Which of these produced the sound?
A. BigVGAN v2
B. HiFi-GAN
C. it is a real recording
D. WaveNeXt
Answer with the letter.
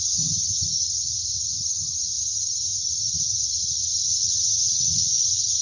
B